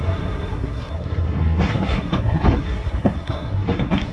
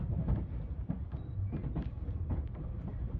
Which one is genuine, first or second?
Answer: second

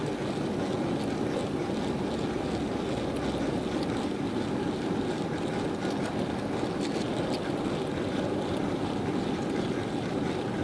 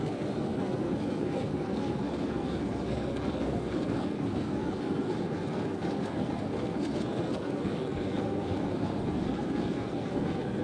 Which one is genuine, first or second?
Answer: first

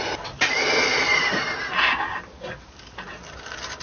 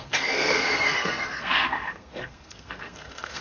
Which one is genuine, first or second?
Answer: first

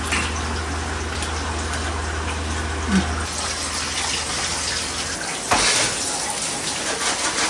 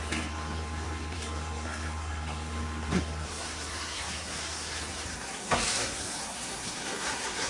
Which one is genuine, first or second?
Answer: first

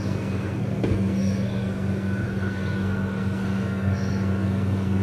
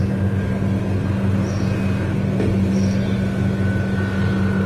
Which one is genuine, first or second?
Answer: second